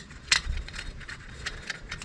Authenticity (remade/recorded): remade